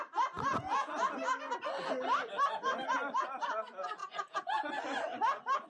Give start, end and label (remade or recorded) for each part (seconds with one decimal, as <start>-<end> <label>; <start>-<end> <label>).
0.0-0.5 recorded; 0.5-1.0 remade; 1.0-4.0 recorded; 4.0-4.7 remade; 4.7-5.7 recorded